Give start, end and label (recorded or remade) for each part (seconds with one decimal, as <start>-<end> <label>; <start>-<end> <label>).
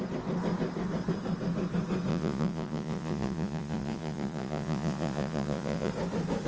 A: 0.0-2.1 recorded; 2.1-5.9 remade; 5.9-6.5 recorded